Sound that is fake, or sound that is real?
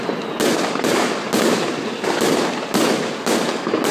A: real